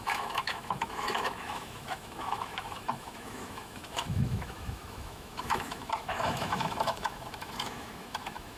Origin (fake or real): fake